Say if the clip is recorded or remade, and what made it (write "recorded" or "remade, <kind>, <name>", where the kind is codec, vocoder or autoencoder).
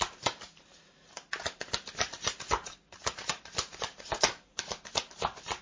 remade, vocoder, BigVGAN v2